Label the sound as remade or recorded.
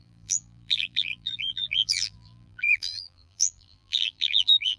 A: remade